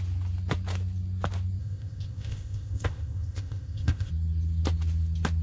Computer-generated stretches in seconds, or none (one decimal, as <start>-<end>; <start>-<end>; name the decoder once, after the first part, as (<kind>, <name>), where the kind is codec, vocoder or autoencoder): 1.6-4.1 (codec, ZipCodec)